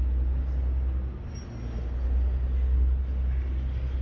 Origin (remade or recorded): recorded